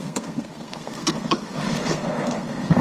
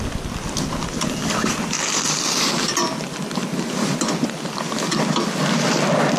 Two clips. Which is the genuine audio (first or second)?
second